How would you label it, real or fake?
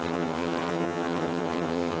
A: fake